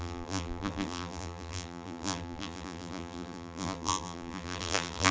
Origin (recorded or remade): remade